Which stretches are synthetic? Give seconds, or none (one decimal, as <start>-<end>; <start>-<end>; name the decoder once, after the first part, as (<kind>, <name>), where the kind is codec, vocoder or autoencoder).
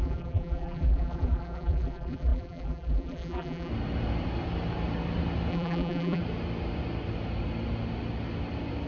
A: 0.0-3.7 (vocoder, BigVGAN v2); 5.5-6.2